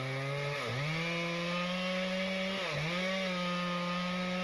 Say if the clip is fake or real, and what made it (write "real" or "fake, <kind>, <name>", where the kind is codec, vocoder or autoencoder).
real